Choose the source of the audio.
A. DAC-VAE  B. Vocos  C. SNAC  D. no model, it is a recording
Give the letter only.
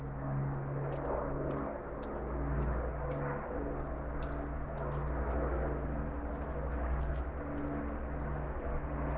D